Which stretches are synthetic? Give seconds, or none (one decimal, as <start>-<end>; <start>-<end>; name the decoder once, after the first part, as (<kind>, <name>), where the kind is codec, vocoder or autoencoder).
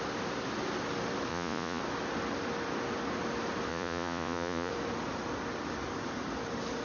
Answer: 1.3-1.8 (vocoder, Vocos); 3.7-4.7